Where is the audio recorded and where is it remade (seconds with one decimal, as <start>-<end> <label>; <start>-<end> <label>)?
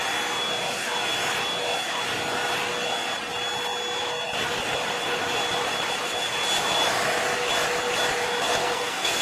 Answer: 0.0-8.6 recorded; 8.6-9.2 remade